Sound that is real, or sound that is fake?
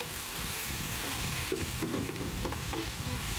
fake